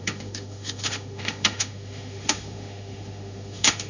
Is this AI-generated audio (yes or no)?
yes